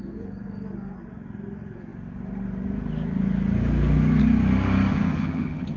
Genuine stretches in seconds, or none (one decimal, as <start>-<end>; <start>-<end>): 0.0-4.9